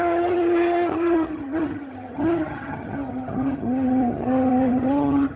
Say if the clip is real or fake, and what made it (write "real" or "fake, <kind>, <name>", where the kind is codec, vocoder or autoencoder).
fake, vocoder, HiFi-GAN